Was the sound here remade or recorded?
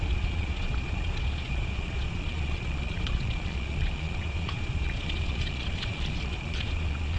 remade